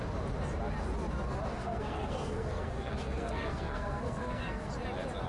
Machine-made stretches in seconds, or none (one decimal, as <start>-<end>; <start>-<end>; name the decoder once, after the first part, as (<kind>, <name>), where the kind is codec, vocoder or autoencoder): 1.5-4.7 (codec, SNAC)